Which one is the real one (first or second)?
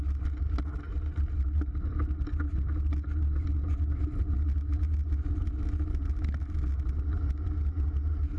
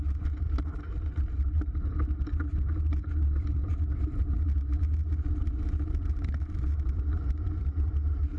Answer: first